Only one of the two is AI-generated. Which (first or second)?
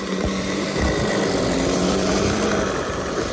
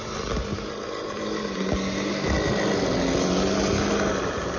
first